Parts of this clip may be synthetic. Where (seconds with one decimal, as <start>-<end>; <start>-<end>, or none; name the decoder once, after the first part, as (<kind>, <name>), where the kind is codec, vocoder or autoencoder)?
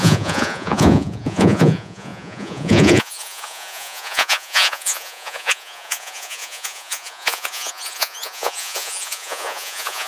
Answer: 0.0-10.1 (vocoder, Vocos)